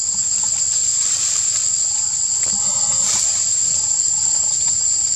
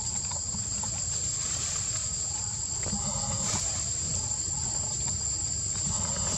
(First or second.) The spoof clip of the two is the second